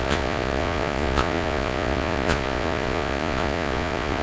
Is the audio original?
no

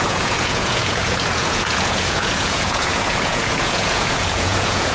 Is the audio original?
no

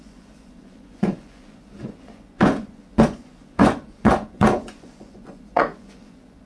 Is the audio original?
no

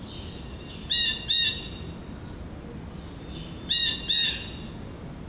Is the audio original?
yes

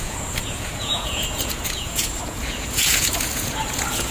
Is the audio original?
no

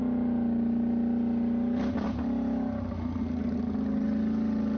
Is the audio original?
yes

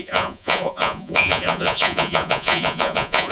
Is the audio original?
no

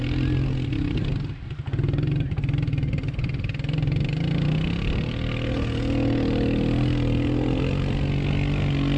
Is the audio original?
yes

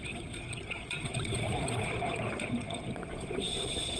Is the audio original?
no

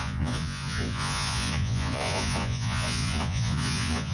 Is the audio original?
no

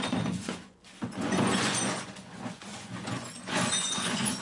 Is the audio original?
no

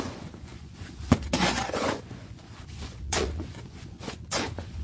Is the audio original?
no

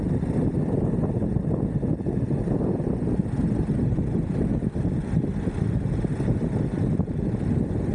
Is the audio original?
yes